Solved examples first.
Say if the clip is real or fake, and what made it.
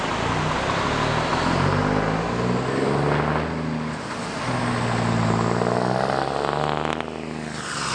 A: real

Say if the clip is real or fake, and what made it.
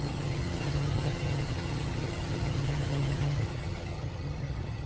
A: fake, vocoder, HiFi-GAN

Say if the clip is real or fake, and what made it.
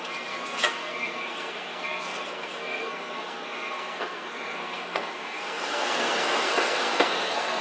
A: fake, codec, SNAC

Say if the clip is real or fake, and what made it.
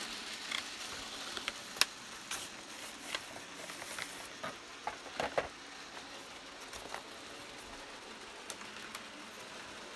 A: real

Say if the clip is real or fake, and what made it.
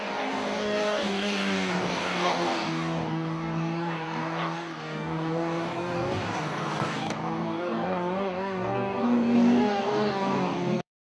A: fake, codec, DAC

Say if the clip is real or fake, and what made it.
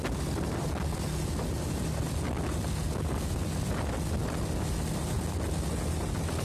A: real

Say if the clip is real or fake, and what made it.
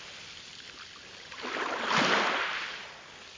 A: real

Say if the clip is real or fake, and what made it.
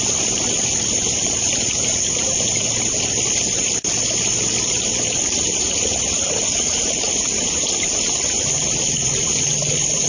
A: real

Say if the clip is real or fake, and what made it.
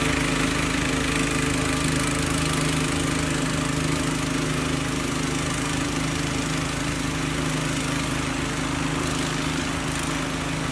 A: real